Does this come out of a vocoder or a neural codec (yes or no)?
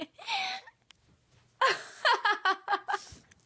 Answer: no